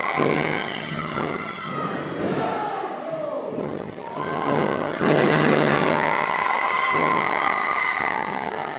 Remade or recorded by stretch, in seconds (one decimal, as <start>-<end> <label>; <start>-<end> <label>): 0.0-1.7 remade; 1.7-3.6 recorded; 3.6-8.8 remade